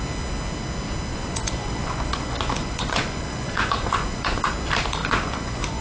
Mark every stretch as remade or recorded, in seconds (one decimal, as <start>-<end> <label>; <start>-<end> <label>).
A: 0.0-1.1 recorded; 1.1-4.5 remade; 4.5-5.0 recorded; 5.0-5.8 remade